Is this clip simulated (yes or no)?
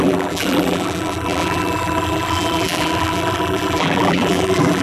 yes